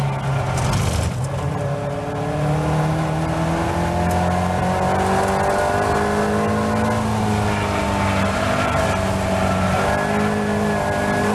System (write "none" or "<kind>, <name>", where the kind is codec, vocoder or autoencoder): none